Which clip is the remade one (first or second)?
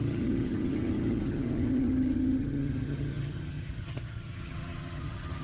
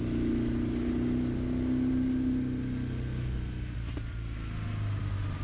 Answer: first